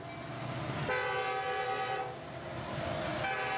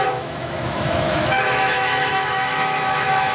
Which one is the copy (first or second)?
second